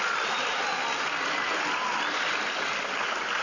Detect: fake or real real